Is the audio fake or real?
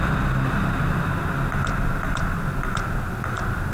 real